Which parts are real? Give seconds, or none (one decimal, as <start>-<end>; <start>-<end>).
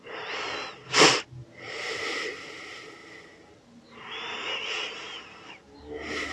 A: 0.0-6.3